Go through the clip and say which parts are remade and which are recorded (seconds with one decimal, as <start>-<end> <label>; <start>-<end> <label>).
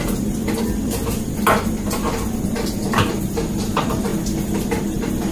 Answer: 0.0-0.4 remade; 0.4-3.6 recorded; 3.6-4.1 remade; 4.1-4.7 recorded; 4.7-5.3 remade